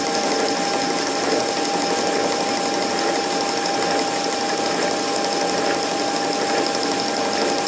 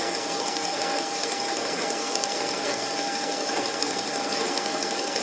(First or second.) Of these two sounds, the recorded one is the first